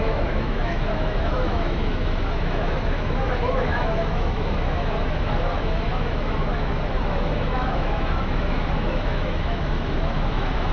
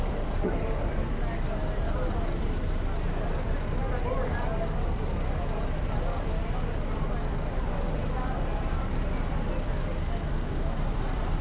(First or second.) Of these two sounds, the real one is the second